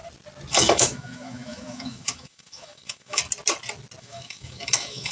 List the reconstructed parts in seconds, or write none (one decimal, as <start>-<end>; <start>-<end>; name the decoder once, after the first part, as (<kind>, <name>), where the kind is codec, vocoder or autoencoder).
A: 0.5-3.2 (autoencoder, DAC-VAE); 4.0-5.1